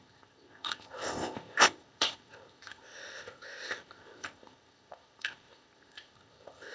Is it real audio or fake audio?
fake